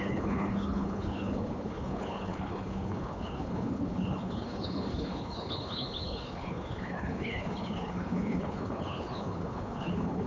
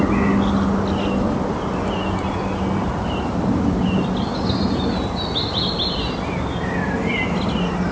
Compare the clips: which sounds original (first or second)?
second